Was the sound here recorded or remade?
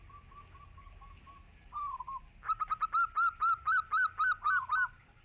recorded